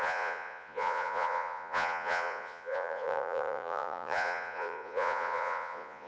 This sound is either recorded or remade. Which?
remade